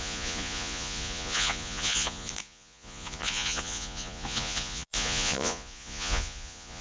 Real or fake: fake